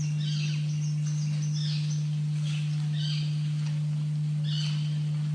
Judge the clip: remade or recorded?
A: recorded